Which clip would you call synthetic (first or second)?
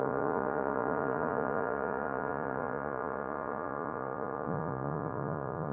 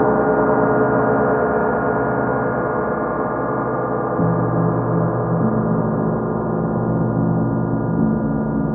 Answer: first